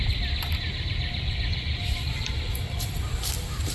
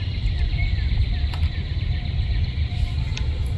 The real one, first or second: first